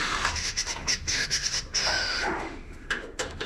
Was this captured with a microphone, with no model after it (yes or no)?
no